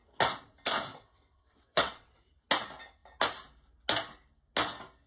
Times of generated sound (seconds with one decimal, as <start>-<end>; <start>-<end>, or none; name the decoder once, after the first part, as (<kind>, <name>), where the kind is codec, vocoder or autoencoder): 0.9-2.3 (vocoder, WaveNeXt)